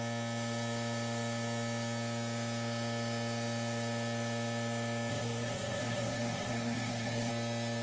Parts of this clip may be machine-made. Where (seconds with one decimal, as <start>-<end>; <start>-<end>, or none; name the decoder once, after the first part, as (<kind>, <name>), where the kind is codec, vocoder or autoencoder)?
5.1-7.3 (codec, SNAC)